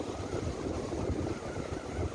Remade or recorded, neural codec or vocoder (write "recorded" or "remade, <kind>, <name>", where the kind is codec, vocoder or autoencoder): recorded